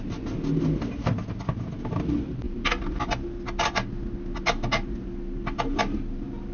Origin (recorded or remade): recorded